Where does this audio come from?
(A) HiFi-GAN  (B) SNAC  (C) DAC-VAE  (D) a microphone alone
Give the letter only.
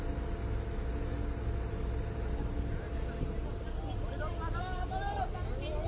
D